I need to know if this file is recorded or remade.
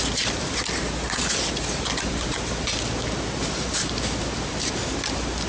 recorded